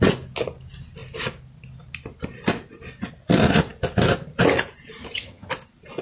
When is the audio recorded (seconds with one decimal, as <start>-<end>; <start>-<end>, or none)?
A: 0.0-5.0; 5.5-6.0